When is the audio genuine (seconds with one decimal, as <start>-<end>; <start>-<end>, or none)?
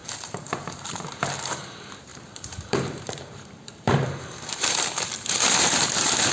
none